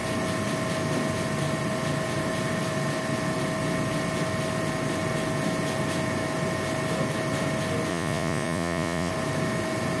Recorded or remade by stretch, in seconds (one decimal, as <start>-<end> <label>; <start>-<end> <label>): 0.0-7.9 recorded; 7.9-9.1 remade; 9.1-10.0 recorded